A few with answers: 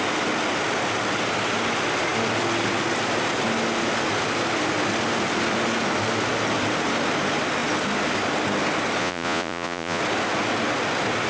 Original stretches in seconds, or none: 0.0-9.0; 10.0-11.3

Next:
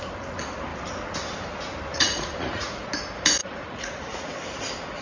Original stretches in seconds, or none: 0.0-1.9; 2.9-3.4; 4.3-5.0